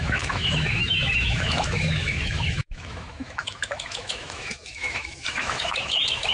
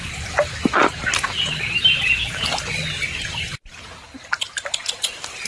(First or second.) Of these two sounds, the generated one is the first